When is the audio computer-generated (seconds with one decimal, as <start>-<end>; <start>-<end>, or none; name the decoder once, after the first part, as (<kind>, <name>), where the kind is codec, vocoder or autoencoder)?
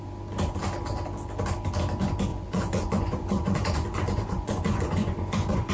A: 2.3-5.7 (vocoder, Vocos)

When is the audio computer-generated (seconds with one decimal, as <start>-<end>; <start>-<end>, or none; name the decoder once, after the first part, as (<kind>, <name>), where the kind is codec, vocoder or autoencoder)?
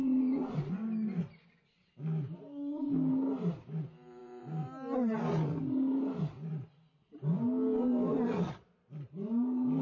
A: 0.0-0.7 (vocoder, Vocos)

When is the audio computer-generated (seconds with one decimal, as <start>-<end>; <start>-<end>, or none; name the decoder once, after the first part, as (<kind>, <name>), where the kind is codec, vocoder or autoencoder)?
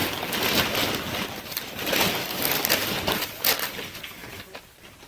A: none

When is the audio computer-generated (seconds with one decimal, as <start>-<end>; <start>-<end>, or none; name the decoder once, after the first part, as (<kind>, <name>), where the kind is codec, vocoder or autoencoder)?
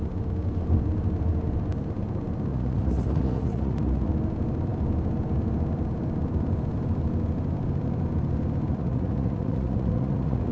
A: 2.5-4.1 (vocoder, Vocos); 8.7-10.5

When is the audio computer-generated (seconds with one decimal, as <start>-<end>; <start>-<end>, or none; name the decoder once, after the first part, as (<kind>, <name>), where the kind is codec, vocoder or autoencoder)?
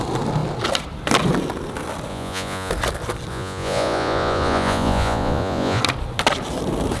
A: 2.1-2.7 (vocoder, Vocos); 3.3-5.8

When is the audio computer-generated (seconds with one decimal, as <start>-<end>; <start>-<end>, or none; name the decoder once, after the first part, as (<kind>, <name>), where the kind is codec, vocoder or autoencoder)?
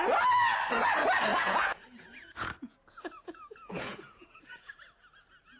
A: 1.3-4.7 (vocoder, Vocos)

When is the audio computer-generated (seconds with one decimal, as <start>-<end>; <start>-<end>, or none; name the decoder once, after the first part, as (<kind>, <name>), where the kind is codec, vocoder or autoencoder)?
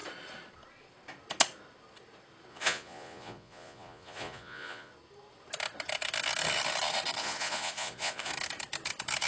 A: 2.5-4.9 (vocoder, Vocos); 7.2-8.3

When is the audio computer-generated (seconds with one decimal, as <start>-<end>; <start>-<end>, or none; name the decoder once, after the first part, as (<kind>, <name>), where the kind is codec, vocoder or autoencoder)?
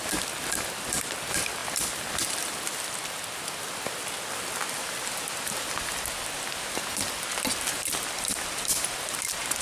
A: none